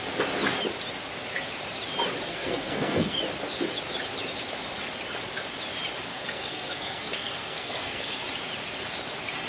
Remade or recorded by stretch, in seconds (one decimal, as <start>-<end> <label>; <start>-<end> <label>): 0.0-2.3 recorded; 2.3-3.2 remade; 3.2-6.1 recorded; 6.1-8.2 remade; 8.2-9.5 recorded